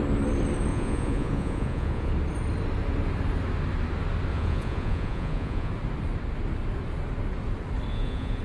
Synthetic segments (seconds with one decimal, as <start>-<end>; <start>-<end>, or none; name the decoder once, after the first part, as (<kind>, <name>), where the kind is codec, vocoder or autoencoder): 0.7-2.1 (vocoder, Vocos); 4.3-5.7; 7.9-8.4